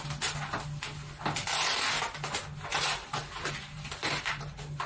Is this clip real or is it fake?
real